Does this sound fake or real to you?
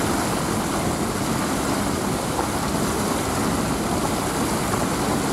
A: real